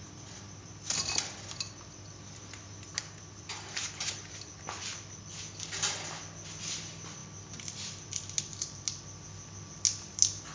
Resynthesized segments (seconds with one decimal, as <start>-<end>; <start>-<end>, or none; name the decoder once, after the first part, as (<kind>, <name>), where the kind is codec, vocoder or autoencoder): none